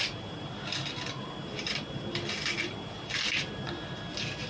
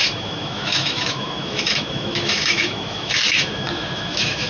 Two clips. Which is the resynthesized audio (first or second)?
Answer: second